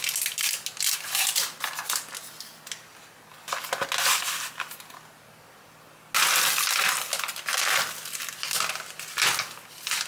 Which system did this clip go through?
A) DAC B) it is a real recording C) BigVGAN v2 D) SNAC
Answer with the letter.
B